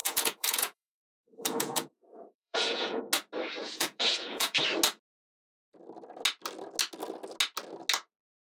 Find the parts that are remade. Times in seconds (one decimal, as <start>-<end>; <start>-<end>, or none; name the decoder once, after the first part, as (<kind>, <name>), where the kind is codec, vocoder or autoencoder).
0.0-3.0 (vocoder, Vocos); 3.6-4.6